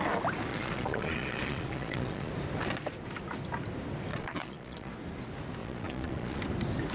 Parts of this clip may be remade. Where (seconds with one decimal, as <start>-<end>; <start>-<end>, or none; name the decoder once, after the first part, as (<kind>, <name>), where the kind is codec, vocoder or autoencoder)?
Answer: 0.5-2.3 (vocoder, Vocos); 4.1-4.9; 5.6-6.4